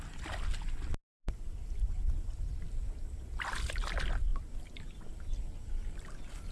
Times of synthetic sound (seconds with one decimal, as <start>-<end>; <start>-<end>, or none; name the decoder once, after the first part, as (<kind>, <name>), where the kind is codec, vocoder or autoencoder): none